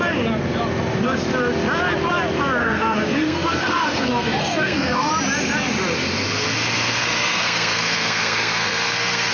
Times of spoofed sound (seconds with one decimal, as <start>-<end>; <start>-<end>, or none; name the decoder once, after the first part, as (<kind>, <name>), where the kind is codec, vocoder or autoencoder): 2.6-5.1 (codec, SNAC); 6.9-9.3